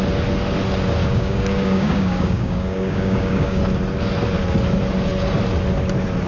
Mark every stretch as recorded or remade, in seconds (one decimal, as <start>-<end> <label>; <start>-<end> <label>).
0.0-1.0 recorded; 1.0-3.6 remade; 3.6-6.3 recorded